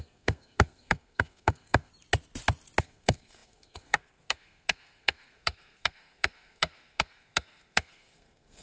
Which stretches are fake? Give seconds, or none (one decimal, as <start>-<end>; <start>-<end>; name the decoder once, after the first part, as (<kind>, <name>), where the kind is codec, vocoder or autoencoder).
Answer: 0.0-1.9 (codec, SNAC); 2.8-8.6